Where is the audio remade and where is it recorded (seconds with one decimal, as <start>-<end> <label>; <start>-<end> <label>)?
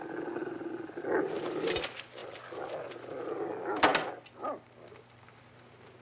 0.0-6.0 recorded